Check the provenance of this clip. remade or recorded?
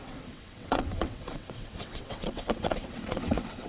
remade